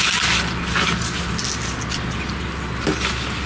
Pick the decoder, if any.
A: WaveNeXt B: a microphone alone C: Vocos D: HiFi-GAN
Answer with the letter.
B